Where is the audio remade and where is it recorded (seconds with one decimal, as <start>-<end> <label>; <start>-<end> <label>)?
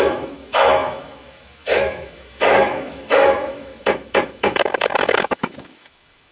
0.0-6.3 remade